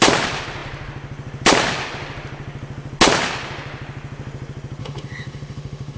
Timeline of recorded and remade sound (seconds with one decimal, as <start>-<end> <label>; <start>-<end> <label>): 0.0-4.8 recorded; 4.8-6.0 remade